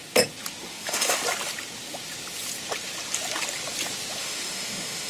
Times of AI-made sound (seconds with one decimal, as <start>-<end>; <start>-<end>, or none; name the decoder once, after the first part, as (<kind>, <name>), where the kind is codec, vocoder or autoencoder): 0.7-1.2 (autoencoder, DAC-VAE); 4.2-5.1